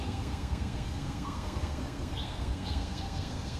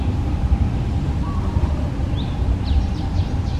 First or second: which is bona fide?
second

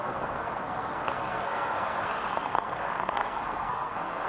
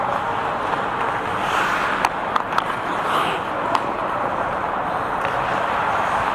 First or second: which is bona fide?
second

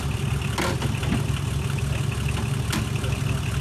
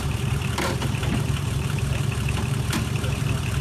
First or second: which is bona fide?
first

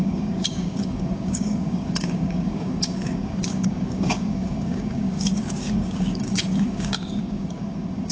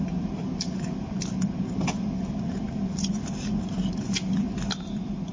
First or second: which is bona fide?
second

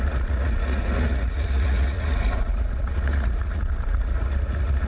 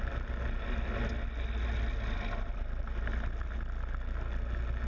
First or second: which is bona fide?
second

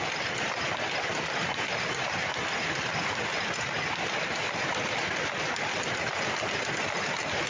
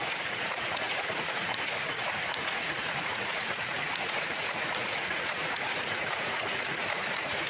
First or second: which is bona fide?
first